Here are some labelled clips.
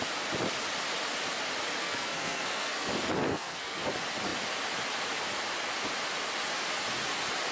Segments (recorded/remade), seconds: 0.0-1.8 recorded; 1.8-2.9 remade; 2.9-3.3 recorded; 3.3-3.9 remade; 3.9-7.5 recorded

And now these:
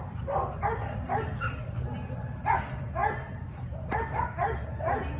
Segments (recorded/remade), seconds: 0.0-5.2 recorded

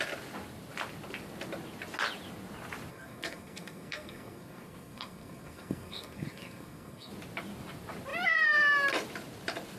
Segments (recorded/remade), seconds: 0.0-2.9 recorded; 2.9-7.1 remade; 7.1-9.8 recorded

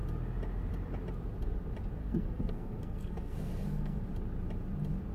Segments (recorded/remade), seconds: 0.0-2.0 recorded; 2.0-4.0 remade; 4.0-5.1 recorded